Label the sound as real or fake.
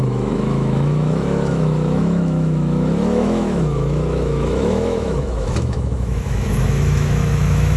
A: fake